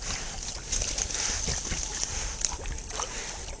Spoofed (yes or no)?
no